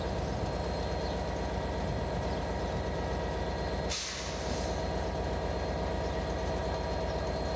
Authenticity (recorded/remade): recorded